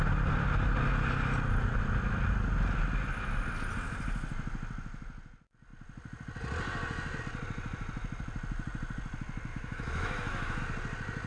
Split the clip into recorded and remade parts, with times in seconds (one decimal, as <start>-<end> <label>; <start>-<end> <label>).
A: 0.0-9.5 recorded; 9.5-10.6 remade; 10.6-11.3 recorded